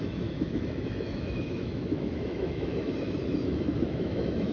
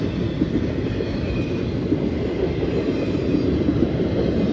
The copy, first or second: first